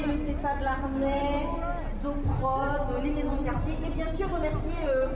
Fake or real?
real